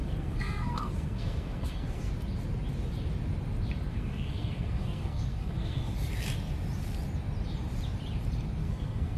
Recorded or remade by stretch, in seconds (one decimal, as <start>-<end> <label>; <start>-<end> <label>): 0.0-2.1 remade; 2.1-3.9 recorded; 3.9-5.9 remade; 5.9-8.6 recorded; 8.6-9.2 remade